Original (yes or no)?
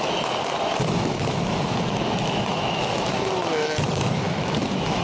no